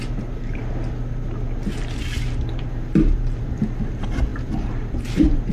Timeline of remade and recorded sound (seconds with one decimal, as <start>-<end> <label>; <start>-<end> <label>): 0.0-0.6 remade; 0.6-3.8 recorded; 3.8-5.5 remade